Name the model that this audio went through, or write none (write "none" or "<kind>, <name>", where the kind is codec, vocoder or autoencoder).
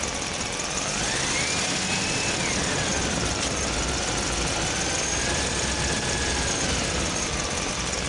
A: none